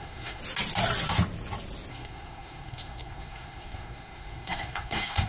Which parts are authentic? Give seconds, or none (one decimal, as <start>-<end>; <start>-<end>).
0.4-1.9